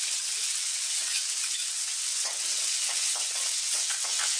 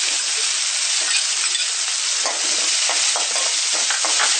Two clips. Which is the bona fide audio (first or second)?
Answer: second